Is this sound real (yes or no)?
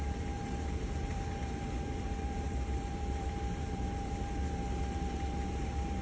no